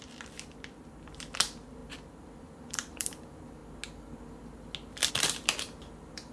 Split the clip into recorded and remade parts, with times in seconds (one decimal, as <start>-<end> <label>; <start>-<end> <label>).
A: 0.0-3.6 remade; 3.6-5.1 recorded; 5.1-6.3 remade